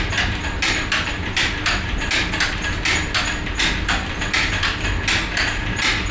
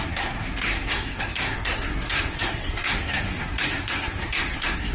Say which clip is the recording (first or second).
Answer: first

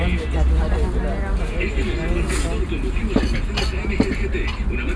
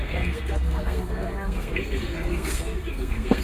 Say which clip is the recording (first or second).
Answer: first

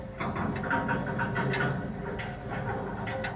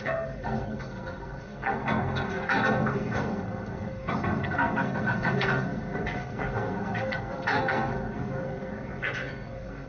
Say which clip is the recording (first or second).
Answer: first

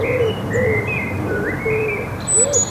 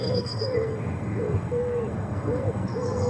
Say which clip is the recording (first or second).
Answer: first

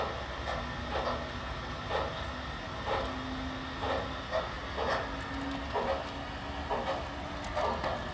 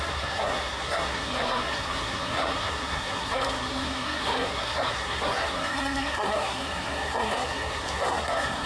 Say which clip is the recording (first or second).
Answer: first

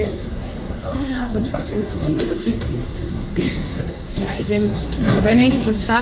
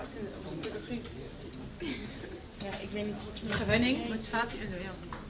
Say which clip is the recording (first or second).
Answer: second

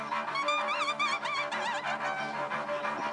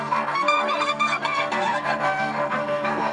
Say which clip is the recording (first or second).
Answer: first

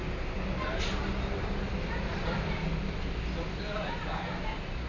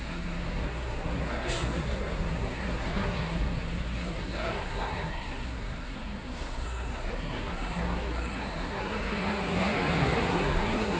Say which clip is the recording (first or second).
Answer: first